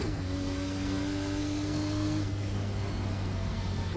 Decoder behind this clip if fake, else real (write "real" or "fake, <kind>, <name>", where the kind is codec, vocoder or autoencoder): fake, codec, SNAC